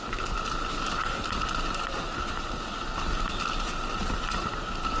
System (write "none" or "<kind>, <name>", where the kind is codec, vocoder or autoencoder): none